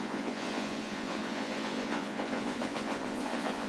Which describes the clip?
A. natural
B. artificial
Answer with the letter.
B